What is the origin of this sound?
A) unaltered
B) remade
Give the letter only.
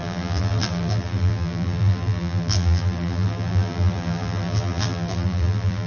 B